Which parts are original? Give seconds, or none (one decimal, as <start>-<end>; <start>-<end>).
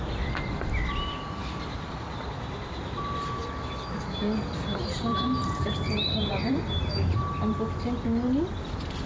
0.0-5.1; 7.2-9.1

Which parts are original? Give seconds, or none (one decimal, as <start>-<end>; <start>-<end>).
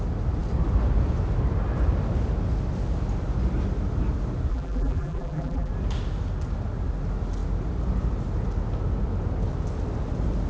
0.0-4.5; 5.7-10.5